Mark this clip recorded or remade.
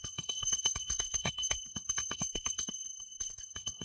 remade